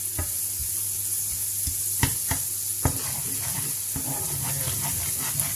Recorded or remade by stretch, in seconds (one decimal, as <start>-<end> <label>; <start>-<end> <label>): 0.0-5.6 recorded